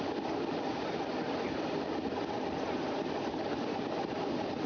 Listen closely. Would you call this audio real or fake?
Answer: real